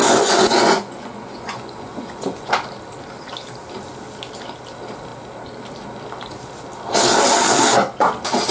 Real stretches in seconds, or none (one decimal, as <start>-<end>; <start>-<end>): 2.5-8.5